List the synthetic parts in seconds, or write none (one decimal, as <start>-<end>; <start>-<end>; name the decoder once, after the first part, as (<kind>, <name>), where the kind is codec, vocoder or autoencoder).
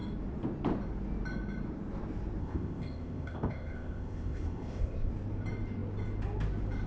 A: 2.4-5.1 (codec, ZipCodec)